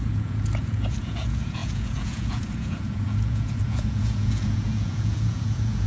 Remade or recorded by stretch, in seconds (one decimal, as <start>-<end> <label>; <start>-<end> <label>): 0.0-5.9 remade

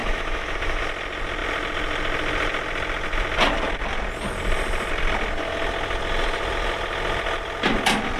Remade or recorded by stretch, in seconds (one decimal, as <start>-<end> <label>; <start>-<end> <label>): 0.0-0.8 remade; 0.8-8.2 recorded

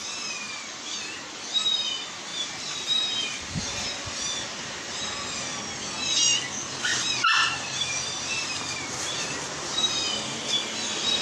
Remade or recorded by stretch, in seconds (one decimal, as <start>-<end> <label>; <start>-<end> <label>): 0.0-2.3 recorded; 2.3-4.7 remade; 4.7-6.9 recorded; 6.9-9.3 remade; 9.3-11.2 recorded

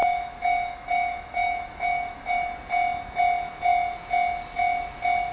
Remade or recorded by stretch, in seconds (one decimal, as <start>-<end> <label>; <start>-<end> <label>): 0.0-2.3 remade; 2.3-5.3 recorded

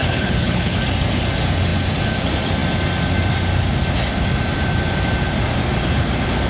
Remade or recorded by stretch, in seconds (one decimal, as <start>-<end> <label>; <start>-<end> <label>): 0.0-0.8 remade; 0.8-6.5 recorded

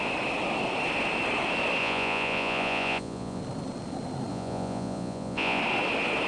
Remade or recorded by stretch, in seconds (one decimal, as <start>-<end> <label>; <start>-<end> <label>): 0.0-1.8 recorded; 1.8-3.4 remade; 3.4-4.3 recorded; 4.3-5.6 remade; 5.6-6.3 recorded

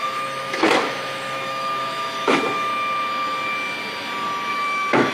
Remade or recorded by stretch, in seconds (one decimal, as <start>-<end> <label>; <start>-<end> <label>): 0.0-2.7 remade; 2.7-4.5 recorded; 4.5-5.1 remade